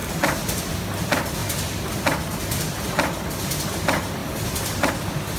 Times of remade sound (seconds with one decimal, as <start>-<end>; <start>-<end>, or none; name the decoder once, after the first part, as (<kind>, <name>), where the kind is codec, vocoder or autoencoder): 0.0-0.7 (vocoder, BigVGAN v2); 4.2-4.9